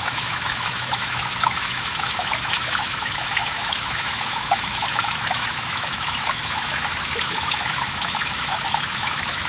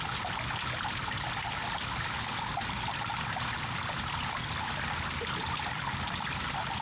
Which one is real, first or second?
second